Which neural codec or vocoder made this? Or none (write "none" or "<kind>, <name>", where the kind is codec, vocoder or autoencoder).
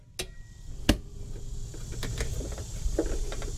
none